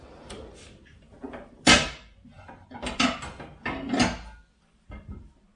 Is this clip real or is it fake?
real